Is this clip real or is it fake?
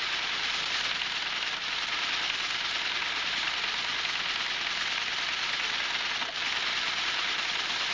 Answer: fake